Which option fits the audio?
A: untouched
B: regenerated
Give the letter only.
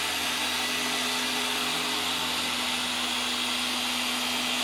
A